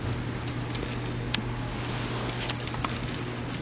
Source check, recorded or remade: recorded